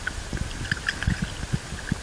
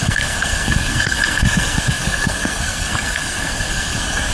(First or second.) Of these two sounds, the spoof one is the second